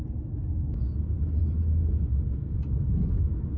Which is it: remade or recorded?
recorded